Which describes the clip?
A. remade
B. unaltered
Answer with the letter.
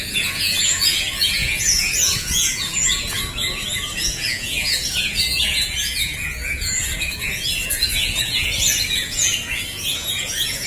A